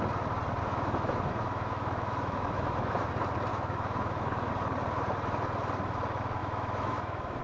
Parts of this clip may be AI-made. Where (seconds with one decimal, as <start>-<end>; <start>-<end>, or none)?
0.6-3.1; 3.5-4.5; 6.4-7.4